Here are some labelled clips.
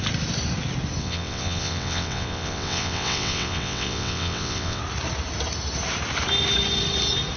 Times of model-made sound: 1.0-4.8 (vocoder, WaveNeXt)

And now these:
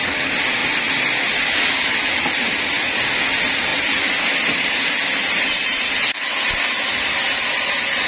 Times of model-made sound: none

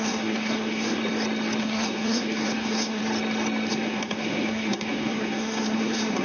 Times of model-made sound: 0.0-1.0 (codec, SNAC); 1.6-3.0; 3.7-6.2